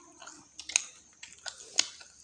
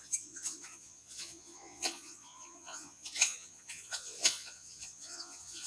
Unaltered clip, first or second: first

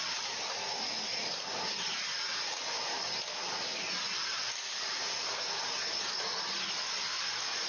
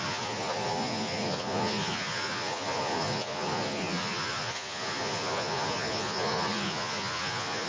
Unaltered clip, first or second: first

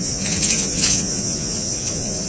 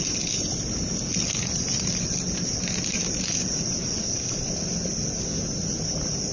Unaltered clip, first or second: second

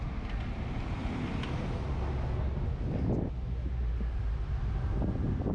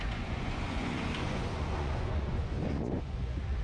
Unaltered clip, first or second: first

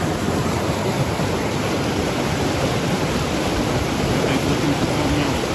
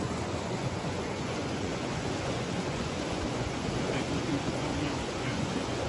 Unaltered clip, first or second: first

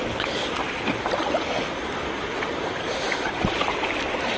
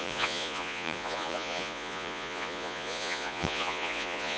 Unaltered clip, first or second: first